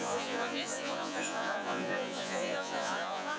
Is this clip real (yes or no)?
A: no